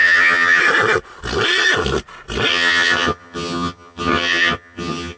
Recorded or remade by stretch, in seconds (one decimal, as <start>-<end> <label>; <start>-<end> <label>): 0.0-0.6 remade; 0.6-2.5 recorded; 2.5-5.2 remade